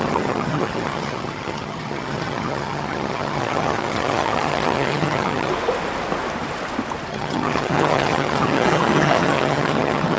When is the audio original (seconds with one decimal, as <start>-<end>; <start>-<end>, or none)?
5.5-7.1